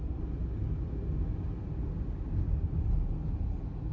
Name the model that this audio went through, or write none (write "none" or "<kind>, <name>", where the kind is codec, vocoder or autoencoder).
none